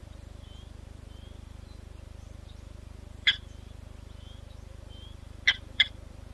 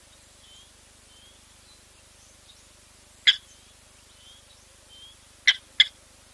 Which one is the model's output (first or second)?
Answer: first